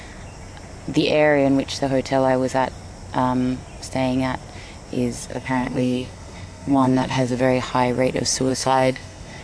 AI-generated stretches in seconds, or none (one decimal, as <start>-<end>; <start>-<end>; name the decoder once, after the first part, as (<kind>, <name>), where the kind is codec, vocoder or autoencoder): 5.3-7.4 (codec, SNAC); 8.5-9.4